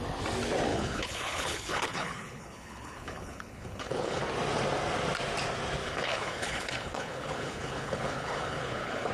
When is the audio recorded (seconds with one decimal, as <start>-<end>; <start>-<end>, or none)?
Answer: 0.0-0.7; 4.2-5.8